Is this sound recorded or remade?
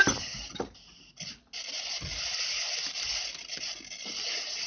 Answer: recorded